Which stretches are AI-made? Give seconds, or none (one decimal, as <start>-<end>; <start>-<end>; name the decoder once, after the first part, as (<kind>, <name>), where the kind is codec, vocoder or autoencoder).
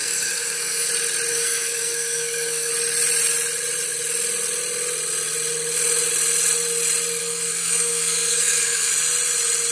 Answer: 0.0-0.9 (codec, SNAC); 1.3-2.7; 7.2-8.9